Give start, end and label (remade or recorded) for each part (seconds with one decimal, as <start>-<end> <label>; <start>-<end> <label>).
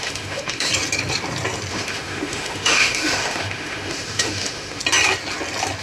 0.0-0.7 remade; 0.7-1.7 recorded; 1.7-4.8 remade; 4.8-5.8 recorded